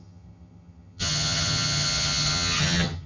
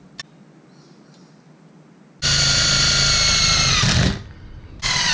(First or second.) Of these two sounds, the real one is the second